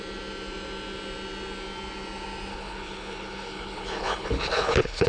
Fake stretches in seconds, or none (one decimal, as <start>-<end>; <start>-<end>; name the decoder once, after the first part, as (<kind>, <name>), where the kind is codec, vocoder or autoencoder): 2.5-5.1 (codec, HILCodec)